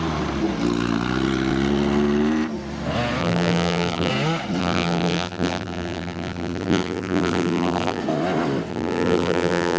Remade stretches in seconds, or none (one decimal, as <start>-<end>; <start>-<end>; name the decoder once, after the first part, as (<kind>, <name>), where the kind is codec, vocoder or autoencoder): 3.2-4.1 (vocoder, BigVGAN v2); 4.6-8.0; 8.7-9.8